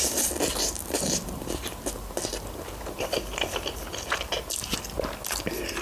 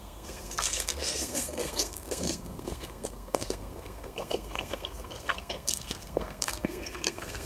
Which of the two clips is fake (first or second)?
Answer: second